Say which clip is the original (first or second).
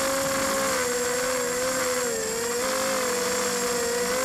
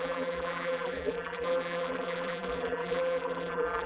first